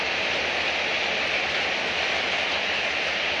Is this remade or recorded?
recorded